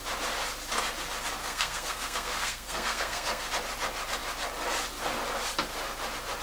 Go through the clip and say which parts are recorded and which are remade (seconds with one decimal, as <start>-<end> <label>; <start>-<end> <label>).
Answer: 0.0-1.4 recorded; 1.4-3.5 remade; 3.5-6.4 recorded